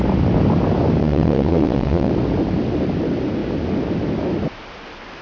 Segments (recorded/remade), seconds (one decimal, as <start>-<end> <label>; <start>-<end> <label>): 0.0-1.0 recorded; 1.0-2.1 remade; 2.1-5.2 recorded